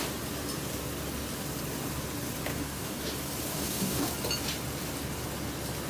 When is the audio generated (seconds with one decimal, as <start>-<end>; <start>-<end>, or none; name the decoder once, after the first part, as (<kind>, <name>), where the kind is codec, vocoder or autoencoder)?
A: 2.5-3.0 (codec, DAC); 3.5-4.1